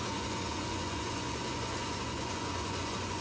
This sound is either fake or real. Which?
fake